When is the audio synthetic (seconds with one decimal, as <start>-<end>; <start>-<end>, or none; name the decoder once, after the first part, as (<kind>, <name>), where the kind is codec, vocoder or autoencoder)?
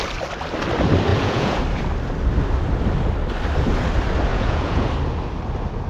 1.1-1.6 (vocoder, Vocos); 4.3-4.9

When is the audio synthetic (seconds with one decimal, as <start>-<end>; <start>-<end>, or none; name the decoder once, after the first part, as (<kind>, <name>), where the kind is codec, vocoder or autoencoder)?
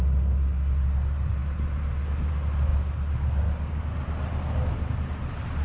none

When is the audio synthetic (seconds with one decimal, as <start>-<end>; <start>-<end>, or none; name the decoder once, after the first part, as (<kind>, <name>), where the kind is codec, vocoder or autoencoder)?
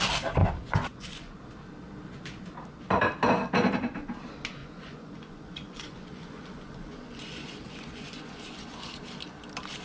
0.4-1.4 (vocoder, Vocos); 4.6-8.9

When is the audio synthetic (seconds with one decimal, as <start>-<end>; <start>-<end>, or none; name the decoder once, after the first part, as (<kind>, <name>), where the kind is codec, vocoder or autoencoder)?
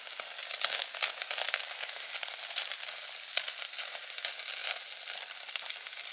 none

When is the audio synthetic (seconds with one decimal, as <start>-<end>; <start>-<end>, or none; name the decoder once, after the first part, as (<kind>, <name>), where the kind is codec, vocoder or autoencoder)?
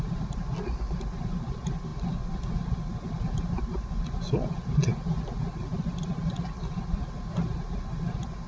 none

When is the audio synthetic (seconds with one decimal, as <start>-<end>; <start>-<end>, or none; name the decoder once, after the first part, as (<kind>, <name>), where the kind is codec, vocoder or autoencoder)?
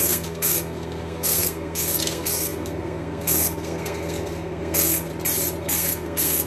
0.0-5.1 (codec, SNAC); 5.6-6.5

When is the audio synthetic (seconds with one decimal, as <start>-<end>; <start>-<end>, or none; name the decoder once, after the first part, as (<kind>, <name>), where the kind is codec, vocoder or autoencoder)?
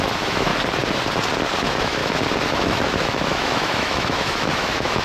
0.0-0.5 (autoencoder, DAC-VAE); 1.6-2.0; 2.5-5.0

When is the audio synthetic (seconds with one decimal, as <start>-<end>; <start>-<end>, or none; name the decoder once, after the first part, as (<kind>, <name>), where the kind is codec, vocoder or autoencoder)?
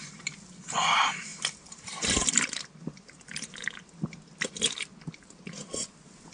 0.0-6.3 (vocoder, BigVGAN v2)